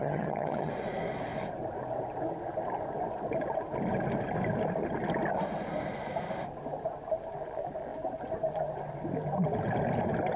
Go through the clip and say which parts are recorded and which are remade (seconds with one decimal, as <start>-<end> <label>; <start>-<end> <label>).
0.0-0.7 remade; 0.7-10.4 recorded